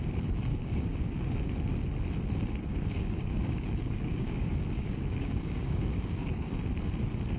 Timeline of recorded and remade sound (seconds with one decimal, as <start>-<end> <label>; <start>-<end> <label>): 0.0-0.5 recorded; 0.5-1.3 remade; 1.3-2.7 recorded; 2.7-6.5 remade; 6.5-7.4 recorded